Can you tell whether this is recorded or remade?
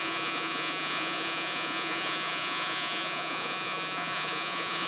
remade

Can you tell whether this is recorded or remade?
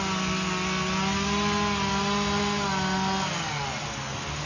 recorded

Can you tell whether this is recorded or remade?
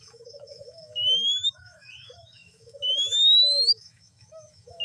remade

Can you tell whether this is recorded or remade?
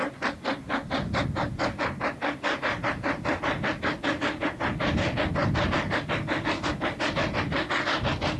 recorded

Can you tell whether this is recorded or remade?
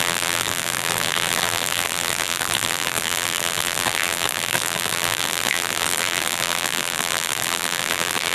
remade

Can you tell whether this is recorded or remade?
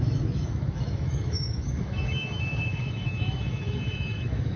remade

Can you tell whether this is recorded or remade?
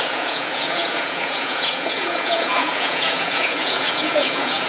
remade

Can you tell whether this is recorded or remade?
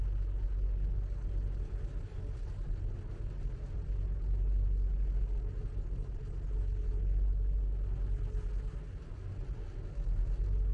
recorded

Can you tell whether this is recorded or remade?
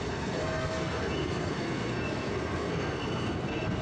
remade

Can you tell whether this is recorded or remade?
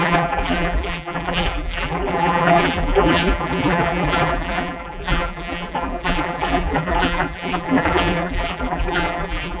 remade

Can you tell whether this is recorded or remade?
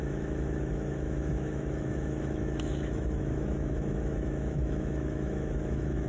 remade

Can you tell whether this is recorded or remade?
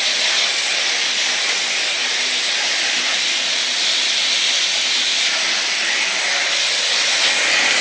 recorded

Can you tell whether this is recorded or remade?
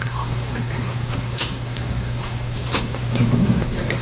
remade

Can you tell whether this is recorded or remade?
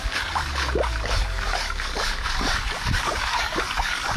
remade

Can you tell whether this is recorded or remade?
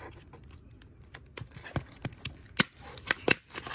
recorded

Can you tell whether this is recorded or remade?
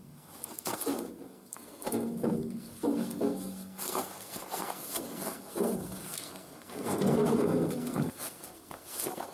remade